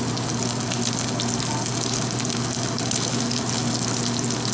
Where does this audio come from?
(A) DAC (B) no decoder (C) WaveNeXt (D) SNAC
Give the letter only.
B